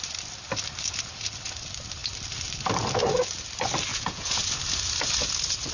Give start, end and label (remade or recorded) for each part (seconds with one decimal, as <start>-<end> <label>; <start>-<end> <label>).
0.0-3.9 recorded; 3.9-4.4 remade; 4.4-5.7 recorded

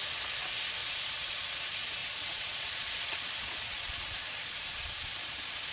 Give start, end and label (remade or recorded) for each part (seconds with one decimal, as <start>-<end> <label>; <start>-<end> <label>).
0.0-0.8 recorded; 0.8-1.4 remade; 1.4-2.0 recorded; 2.0-5.7 remade

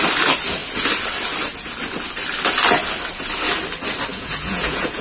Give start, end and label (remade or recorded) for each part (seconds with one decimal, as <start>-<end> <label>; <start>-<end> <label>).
0.0-4.1 recorded; 4.1-5.0 remade

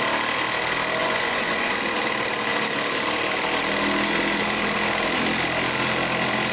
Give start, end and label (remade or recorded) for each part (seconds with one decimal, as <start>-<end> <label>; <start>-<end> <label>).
0.0-1.0 recorded; 1.0-1.7 remade; 1.7-6.5 recorded